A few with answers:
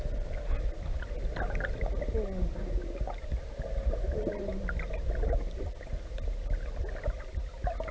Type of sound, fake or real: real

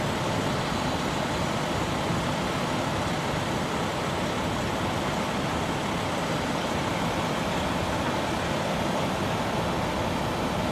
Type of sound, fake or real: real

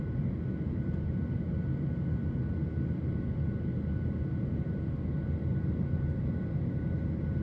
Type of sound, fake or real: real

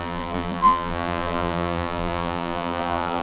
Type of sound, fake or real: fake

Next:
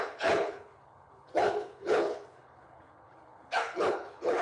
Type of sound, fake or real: fake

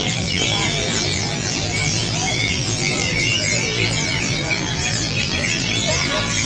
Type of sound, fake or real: fake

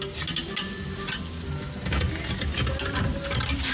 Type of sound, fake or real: real